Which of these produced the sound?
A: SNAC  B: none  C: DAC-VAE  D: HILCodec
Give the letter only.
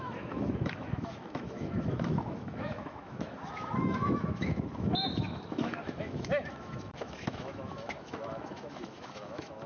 C